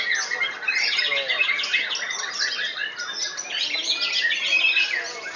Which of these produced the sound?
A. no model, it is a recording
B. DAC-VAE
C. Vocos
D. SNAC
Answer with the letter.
A